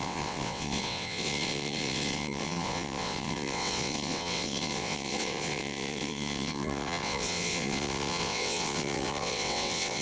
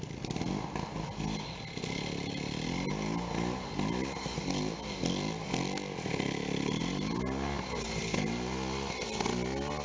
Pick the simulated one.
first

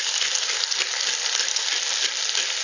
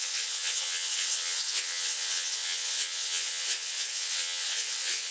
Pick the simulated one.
second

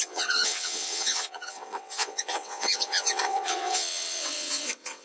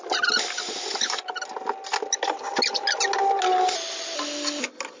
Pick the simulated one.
first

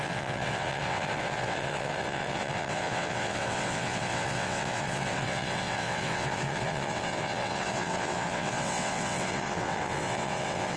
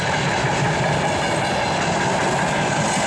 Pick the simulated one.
first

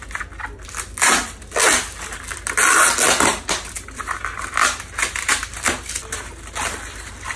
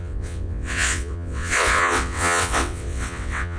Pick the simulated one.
second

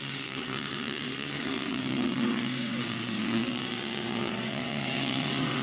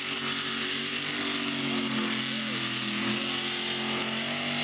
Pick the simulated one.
first